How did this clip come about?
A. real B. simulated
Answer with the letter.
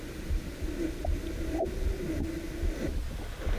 A